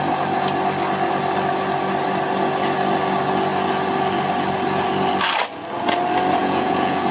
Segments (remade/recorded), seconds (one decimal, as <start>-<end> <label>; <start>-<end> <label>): 0.0-6.4 recorded; 6.4-7.1 remade